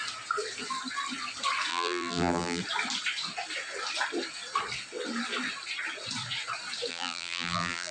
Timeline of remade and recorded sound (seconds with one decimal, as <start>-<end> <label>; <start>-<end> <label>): 0.0-1.7 recorded; 1.7-2.6 remade; 2.6-6.9 recorded; 6.9-7.9 remade